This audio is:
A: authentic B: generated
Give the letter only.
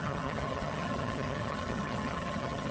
B